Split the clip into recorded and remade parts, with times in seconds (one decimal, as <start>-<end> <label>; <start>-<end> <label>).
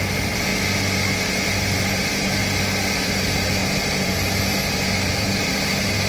0.0-0.5 remade; 0.5-1.3 recorded; 1.3-2.4 remade; 2.4-2.9 recorded; 2.9-6.1 remade